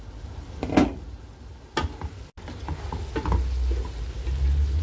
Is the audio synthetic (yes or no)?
no